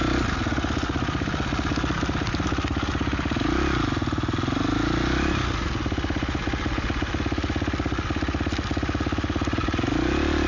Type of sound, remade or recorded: recorded